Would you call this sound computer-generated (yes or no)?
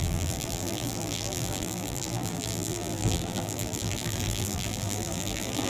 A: yes